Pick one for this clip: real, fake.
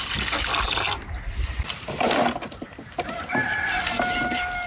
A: real